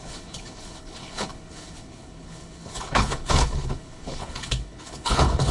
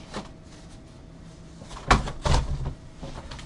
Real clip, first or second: second